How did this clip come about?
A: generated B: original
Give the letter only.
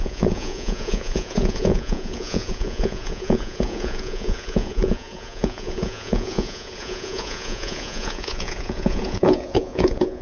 A